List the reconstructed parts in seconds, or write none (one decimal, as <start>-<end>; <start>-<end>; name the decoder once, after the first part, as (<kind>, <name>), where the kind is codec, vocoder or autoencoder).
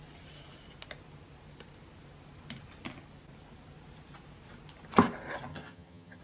5.5-6.2 (vocoder, HiFi-GAN)